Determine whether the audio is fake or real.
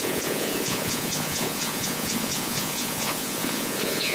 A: fake